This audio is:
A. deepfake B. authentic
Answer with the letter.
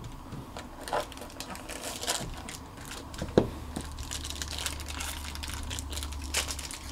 B